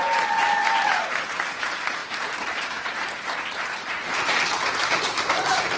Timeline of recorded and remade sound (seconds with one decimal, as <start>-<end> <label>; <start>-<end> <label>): 0.0-5.8 remade